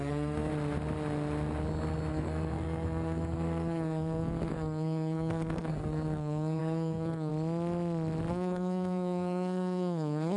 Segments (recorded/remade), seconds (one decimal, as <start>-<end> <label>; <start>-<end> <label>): 0.0-0.5 remade; 0.5-2.1 recorded; 2.1-7.3 remade; 7.3-8.3 recorded; 8.3-10.4 remade